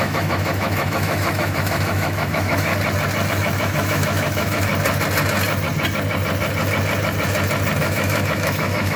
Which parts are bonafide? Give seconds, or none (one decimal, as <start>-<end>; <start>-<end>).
2.7-3.3; 4.7-7.8